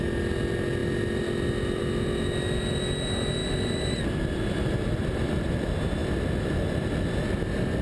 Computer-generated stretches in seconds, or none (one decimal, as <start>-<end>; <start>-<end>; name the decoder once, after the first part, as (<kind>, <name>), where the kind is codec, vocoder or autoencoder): 0.8-1.8 (vocoder, BigVGAN v2); 3.4-5.5